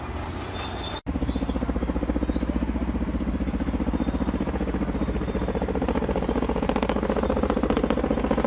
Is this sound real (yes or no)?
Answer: yes